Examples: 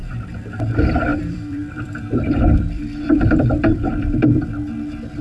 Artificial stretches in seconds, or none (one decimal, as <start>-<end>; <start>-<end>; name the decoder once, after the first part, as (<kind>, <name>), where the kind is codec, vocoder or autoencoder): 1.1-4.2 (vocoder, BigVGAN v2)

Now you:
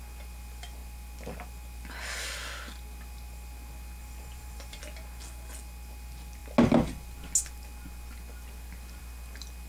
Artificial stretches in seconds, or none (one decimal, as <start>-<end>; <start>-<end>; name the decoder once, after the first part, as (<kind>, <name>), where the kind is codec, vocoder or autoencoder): 4.0-4.8 (vocoder, BigVGAN v2)

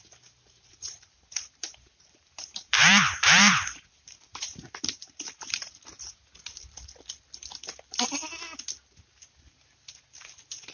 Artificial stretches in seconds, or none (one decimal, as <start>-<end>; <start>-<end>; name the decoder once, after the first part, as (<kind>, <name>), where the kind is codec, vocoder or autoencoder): 0.0-6.2 (vocoder, BigVGAN v2); 9.9-10.7